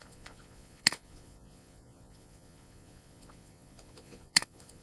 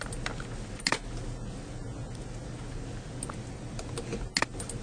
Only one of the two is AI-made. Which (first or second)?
first